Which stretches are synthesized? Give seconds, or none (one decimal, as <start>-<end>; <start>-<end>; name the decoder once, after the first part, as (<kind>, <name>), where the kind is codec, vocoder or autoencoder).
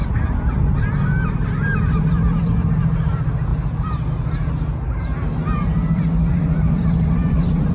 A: 3.5-4.1 (vocoder, BigVGAN v2); 5.4-7.7